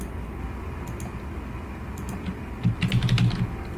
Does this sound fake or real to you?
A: real